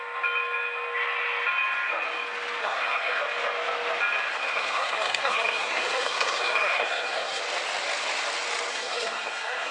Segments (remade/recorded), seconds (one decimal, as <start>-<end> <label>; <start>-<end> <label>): 0.0-2.6 recorded; 2.6-3.2 remade; 3.2-4.3 recorded; 4.3-7.4 remade; 7.4-8.7 recorded; 8.7-9.7 remade